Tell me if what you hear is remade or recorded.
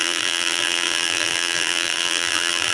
remade